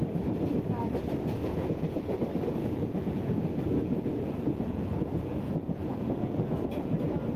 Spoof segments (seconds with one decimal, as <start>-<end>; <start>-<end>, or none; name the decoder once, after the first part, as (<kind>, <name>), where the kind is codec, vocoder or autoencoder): 1.4-2.2 (vocoder, Vocos); 2.6-7.0